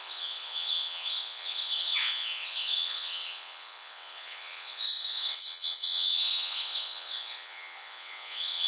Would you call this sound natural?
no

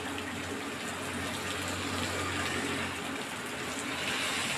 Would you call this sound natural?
yes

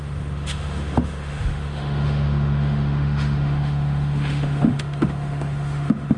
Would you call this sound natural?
no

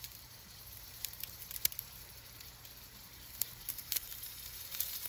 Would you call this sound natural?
no